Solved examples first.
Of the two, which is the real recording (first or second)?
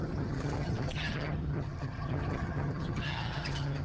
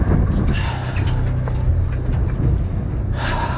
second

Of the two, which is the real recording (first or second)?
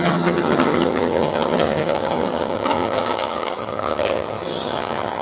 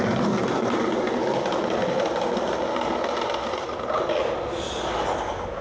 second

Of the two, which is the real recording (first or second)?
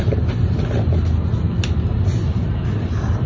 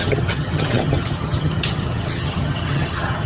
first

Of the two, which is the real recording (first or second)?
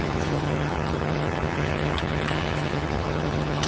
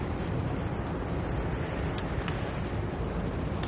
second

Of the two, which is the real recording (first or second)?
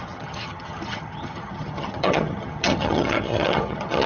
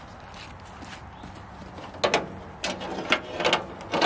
second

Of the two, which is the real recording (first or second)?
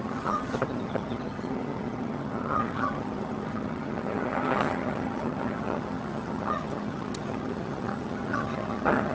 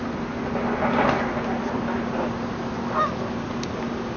second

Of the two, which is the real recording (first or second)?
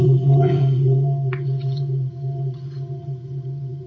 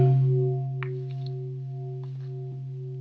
second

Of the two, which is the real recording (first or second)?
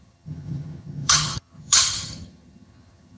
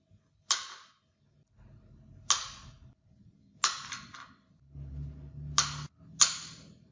second